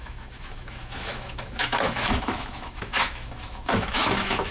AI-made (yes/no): yes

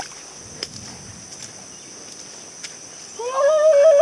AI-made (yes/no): no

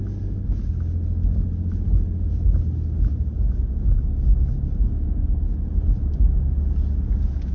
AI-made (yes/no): no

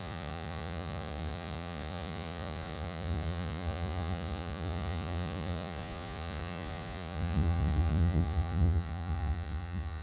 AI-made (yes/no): yes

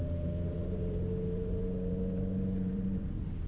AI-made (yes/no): yes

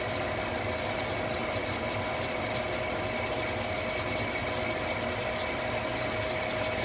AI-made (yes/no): no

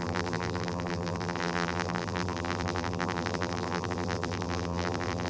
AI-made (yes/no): yes